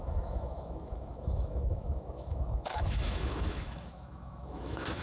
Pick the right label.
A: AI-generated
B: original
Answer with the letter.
A